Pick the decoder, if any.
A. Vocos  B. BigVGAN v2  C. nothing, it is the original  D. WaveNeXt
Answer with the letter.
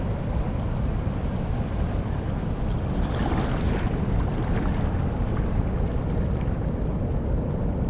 C